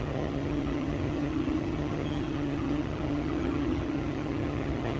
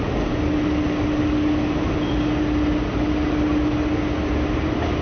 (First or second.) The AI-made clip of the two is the first